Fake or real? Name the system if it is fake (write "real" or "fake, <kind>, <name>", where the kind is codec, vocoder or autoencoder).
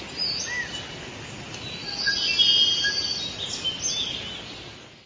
real